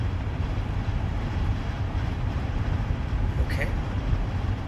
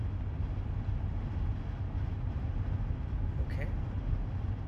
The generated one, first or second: first